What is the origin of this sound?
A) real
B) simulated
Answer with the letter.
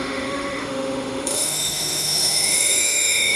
B